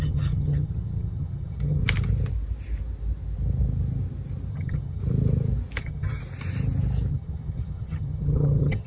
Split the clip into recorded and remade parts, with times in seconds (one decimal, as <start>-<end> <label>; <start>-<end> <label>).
0.0-1.8 remade; 1.8-4.5 recorded; 4.5-5.0 remade; 5.0-5.8 recorded; 5.8-6.2 remade; 6.2-7.1 recorded; 7.1-8.9 remade